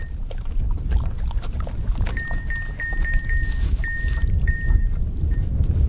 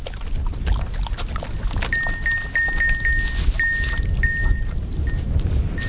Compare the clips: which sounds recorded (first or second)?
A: second